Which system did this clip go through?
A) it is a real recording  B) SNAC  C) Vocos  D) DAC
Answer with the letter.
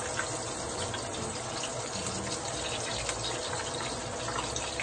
A